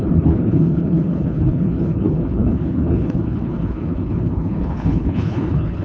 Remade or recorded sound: remade